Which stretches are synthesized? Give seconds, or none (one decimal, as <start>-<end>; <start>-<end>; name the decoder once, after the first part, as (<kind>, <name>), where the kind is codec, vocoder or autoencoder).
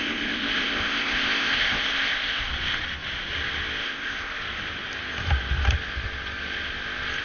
0.0-2.5 (codec, ZipCodec); 3.8-4.4